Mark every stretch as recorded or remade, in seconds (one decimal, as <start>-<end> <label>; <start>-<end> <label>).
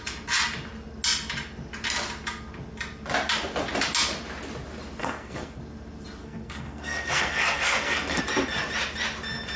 0.0-5.0 recorded; 5.0-5.6 remade; 5.6-6.2 recorded; 6.2-8.2 remade; 8.2-9.6 recorded